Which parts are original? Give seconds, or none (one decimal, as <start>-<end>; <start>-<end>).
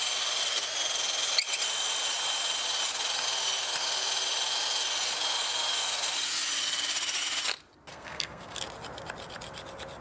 0.0-7.9; 8.6-10.0